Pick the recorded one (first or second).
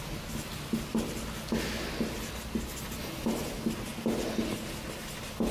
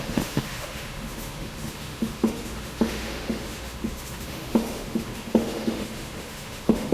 first